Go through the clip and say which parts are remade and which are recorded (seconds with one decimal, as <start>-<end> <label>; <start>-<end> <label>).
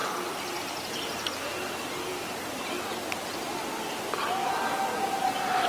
0.0-5.7 recorded